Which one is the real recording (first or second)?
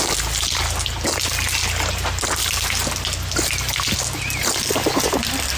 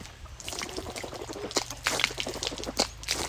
first